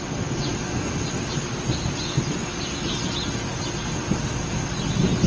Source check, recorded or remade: recorded